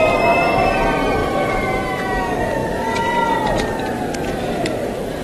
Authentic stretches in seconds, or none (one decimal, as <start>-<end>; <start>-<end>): 0.0-1.2; 1.8-2.6; 3.3-5.2